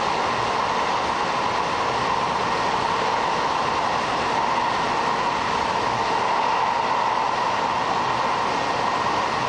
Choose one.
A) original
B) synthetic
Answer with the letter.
A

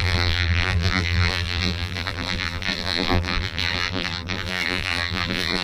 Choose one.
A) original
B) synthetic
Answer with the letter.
B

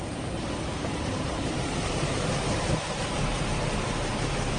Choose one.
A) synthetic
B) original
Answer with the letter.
A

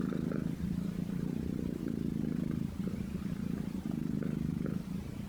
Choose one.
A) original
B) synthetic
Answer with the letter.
A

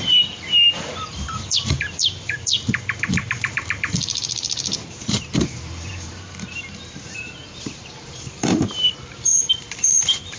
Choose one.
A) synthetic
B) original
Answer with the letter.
A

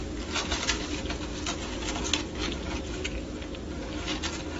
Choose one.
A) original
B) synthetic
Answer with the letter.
A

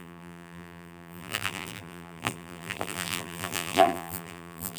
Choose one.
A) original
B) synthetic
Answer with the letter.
B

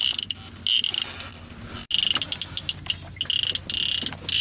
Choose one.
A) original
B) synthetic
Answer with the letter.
A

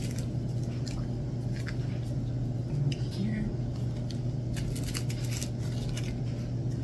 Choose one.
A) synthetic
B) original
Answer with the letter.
B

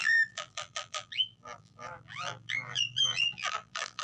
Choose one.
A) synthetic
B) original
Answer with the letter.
A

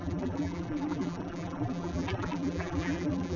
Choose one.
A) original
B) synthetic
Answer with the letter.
B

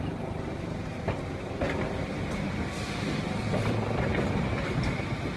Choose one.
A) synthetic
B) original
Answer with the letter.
A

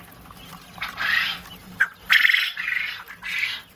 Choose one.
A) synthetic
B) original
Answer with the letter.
B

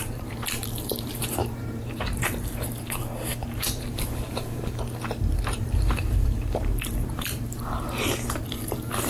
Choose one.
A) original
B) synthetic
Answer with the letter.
B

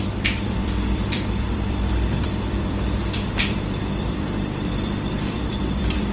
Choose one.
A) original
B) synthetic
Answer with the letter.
B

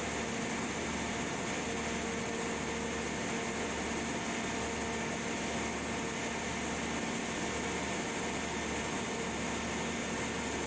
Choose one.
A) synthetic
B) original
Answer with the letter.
B